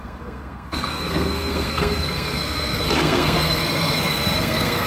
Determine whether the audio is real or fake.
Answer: fake